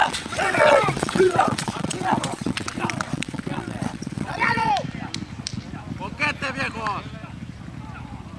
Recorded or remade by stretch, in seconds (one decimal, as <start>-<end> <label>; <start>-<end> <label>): 0.0-4.7 remade; 4.7-8.4 recorded